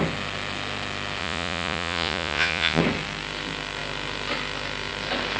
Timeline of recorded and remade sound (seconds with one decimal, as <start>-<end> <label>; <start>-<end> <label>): 0.0-1.2 recorded; 1.2-2.8 remade; 2.8-5.4 recorded